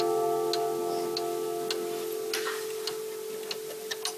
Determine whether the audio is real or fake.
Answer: real